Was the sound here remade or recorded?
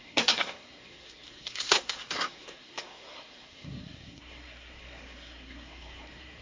remade